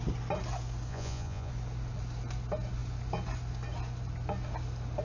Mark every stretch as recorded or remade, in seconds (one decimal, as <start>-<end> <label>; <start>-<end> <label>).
0.0-0.9 recorded; 0.9-1.5 remade; 1.5-5.0 recorded